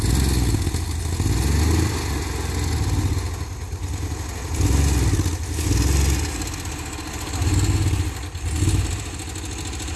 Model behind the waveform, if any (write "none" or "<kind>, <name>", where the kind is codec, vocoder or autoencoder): none